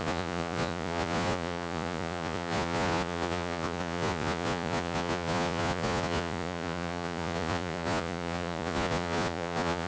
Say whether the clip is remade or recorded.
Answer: remade